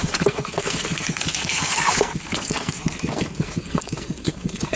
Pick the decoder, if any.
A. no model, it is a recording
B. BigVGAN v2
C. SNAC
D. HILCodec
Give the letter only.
C